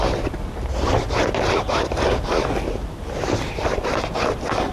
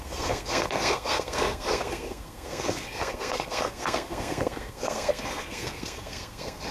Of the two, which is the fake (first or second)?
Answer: second